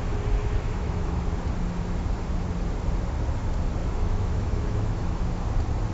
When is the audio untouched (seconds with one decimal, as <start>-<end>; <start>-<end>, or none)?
0.0-0.4; 1.3-3.8; 5.2-5.9